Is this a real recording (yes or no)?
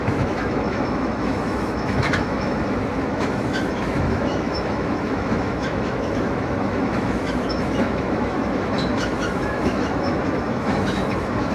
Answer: no